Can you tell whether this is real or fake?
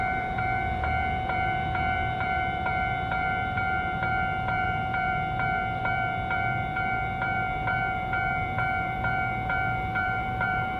fake